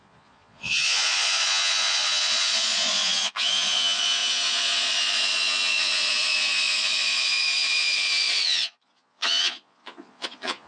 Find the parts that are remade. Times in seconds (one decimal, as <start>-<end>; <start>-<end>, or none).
0.0-10.7